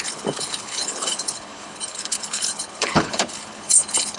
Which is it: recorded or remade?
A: remade